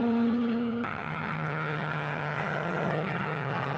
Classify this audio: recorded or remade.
remade